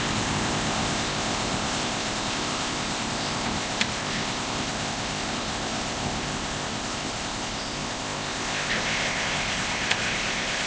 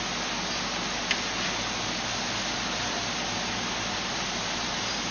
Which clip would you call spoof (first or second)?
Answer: first